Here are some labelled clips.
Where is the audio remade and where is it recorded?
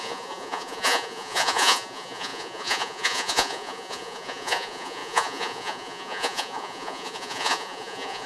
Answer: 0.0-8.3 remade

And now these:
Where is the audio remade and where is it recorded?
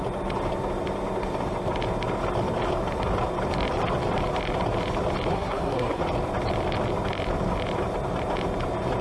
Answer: 0.0-5.3 recorded; 5.3-6.0 remade; 6.0-9.0 recorded